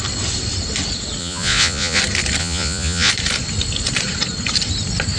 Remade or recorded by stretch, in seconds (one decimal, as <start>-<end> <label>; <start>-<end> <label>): 0.0-1.2 recorded; 1.2-2.0 remade; 2.0-2.4 recorded; 2.4-3.1 remade; 3.1-5.2 recorded